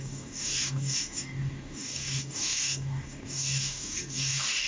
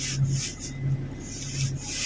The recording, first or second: second